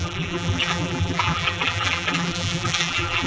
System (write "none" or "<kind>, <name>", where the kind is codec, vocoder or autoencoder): vocoder, BigVGAN v2